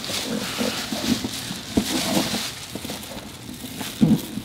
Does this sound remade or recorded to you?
recorded